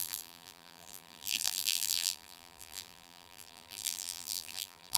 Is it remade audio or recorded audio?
remade